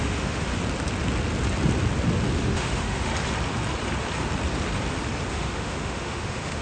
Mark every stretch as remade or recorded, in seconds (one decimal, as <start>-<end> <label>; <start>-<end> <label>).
0.0-0.5 remade; 0.5-2.4 recorded; 2.4-3.1 remade; 3.1-5.3 recorded; 5.3-6.6 remade